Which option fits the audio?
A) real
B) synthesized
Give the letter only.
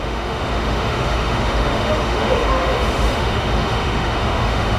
B